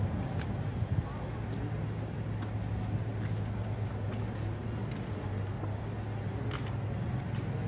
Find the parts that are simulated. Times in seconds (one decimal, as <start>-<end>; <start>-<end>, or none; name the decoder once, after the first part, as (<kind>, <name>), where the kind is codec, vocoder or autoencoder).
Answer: none